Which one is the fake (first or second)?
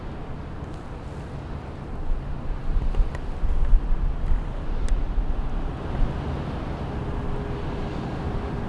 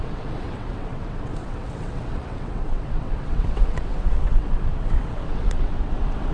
second